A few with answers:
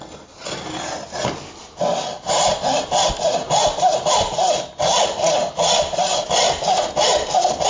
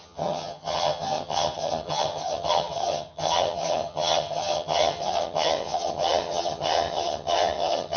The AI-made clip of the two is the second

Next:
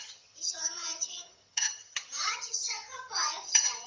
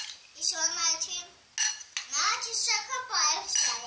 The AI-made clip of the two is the first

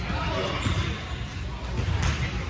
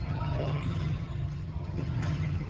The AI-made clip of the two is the second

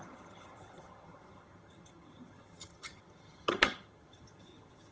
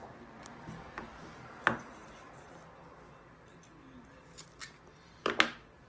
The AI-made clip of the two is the first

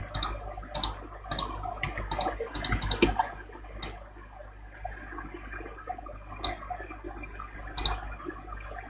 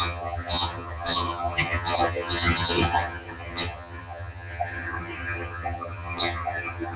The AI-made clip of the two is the second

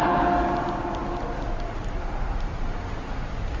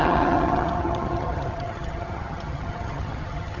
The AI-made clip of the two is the second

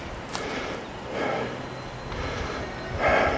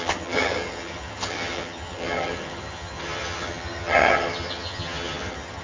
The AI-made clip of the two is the second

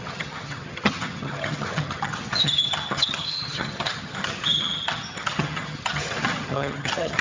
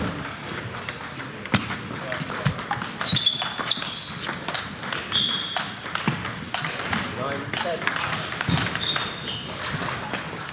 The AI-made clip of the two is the first